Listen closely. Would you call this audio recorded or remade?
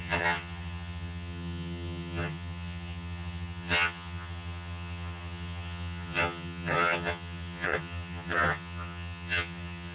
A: remade